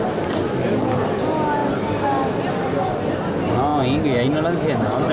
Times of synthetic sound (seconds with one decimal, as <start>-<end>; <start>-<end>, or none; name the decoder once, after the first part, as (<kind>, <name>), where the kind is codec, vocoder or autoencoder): none